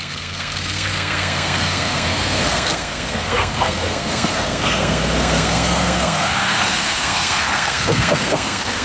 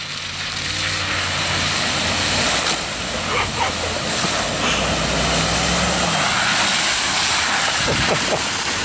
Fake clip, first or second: first